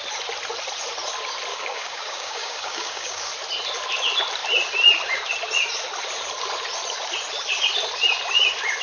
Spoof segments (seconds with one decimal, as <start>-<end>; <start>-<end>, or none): 1.5-3.3